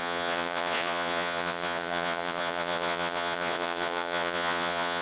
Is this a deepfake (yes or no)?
yes